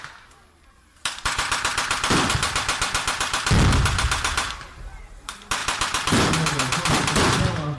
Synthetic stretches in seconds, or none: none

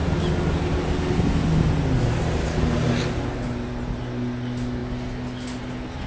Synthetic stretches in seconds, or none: none

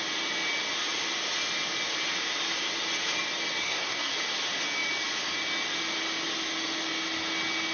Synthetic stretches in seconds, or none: 3.6-4.1 (codec, SNAC)

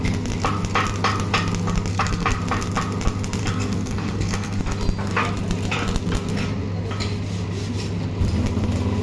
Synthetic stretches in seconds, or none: 1.9-2.4 (codec, SNAC); 3.4-4.6

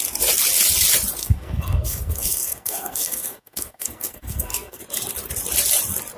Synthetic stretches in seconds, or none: 1.2-4.8 (codec, SNAC)

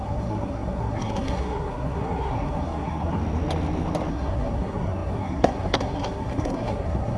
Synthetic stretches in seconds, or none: 0.0-3.2 (codec, SNAC); 4.1-7.2

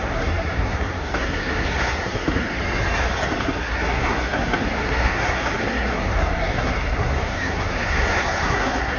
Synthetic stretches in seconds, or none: 0.0-2.6 (codec, SNAC); 3.4-9.0